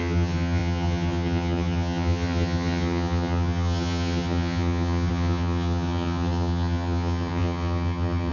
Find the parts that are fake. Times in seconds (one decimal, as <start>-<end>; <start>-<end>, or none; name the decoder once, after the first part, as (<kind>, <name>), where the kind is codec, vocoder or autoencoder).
0.0-8.3 (vocoder, HiFi-GAN)